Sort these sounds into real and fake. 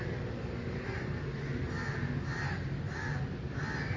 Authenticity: real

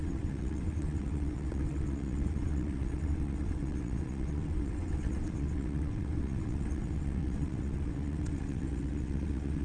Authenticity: fake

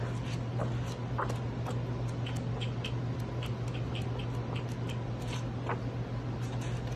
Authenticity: real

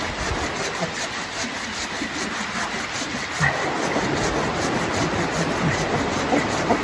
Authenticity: real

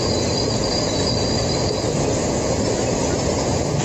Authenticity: fake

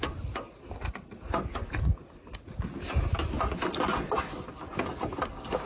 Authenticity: real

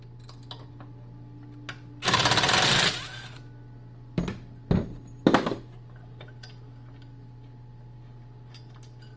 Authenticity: real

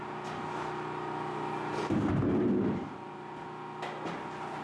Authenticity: real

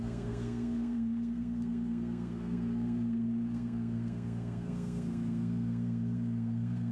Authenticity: fake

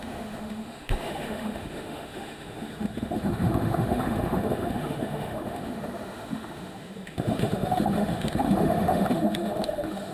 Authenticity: fake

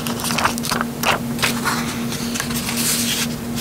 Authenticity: real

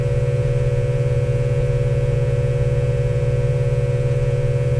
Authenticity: fake